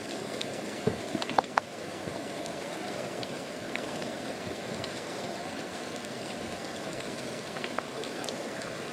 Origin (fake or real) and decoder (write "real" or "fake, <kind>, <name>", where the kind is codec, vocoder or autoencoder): fake, codec, SNAC